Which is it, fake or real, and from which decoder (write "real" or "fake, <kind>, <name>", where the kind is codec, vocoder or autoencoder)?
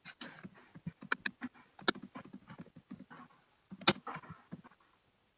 real